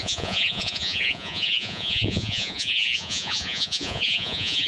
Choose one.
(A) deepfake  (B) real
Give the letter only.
A